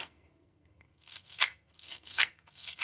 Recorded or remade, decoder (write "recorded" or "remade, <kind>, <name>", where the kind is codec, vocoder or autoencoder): remade, codec, SNAC